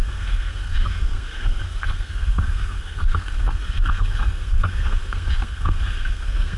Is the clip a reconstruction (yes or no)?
yes